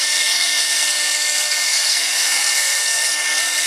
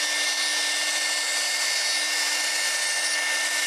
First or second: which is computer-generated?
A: first